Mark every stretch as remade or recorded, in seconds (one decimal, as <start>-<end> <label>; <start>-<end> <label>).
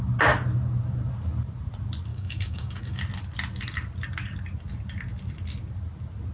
0.0-2.1 recorded; 2.1-3.0 remade; 3.0-6.3 recorded